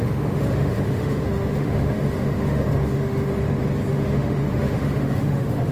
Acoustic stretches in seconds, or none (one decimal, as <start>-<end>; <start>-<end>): 3.3-3.9